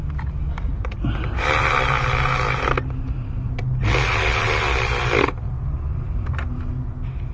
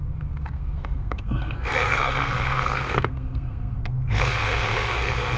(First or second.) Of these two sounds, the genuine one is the first